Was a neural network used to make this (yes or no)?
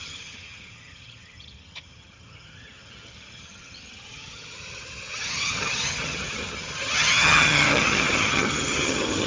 yes